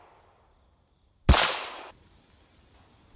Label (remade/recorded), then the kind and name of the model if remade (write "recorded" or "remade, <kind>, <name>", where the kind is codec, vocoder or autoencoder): recorded